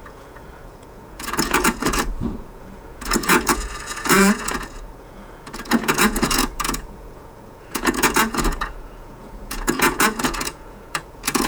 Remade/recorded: remade